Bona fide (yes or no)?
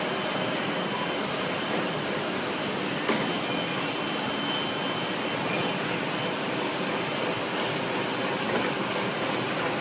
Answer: yes